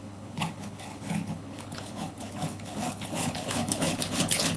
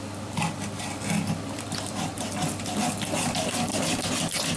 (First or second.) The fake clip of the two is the first